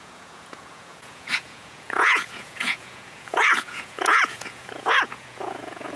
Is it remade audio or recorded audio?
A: remade